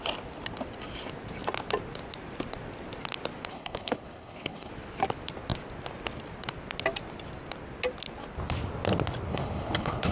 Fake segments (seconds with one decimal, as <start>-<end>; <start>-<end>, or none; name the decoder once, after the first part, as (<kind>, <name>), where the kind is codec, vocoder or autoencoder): 3.5-4.7 (codec, HILCodec); 9.3-10.1